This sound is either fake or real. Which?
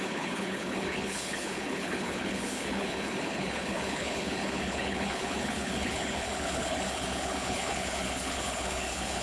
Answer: fake